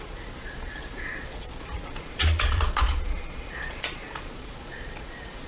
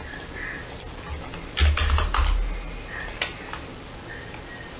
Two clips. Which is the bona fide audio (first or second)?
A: second